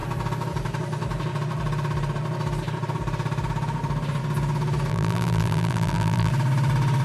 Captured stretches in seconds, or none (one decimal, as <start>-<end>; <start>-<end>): 0.0-4.9; 6.3-7.0

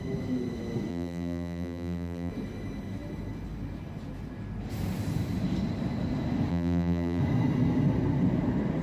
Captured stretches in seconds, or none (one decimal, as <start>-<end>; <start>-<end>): 0.0-0.9; 2.3-6.5; 7.2-8.8